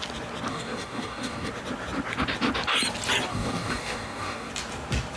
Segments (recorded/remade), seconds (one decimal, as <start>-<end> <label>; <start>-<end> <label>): 0.0-0.5 recorded; 0.5-1.5 remade; 1.5-3.3 recorded; 3.3-4.5 remade; 4.5-5.2 recorded